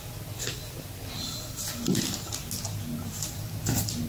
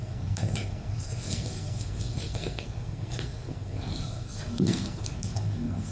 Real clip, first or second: first